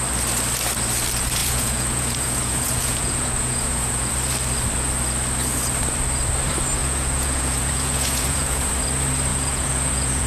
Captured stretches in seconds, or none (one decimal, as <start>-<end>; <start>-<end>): 0.0-1.4; 4.1-6.8; 8.7-9.3